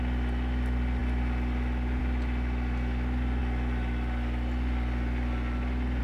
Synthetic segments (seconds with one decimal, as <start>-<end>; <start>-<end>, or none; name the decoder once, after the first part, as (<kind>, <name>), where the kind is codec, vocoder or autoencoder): none

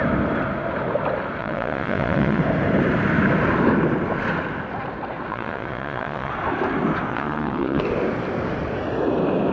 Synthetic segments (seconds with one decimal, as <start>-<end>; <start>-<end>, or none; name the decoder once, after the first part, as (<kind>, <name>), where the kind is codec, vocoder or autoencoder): 1.4-2.4 (vocoder, Vocos); 5.3-6.3; 7.1-7.8

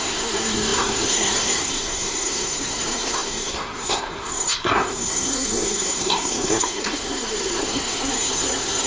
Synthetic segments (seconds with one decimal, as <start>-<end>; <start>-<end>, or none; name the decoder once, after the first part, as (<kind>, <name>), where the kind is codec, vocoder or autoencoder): 0.0-8.9 (codec, SNAC)

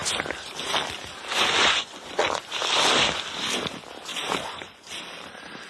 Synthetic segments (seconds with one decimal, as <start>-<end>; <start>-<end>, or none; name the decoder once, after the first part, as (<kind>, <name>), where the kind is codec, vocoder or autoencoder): 1.3-2.4 (vocoder, Vocos); 4.1-4.9